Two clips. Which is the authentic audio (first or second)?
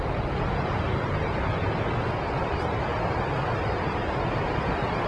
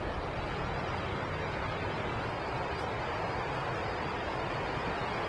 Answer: second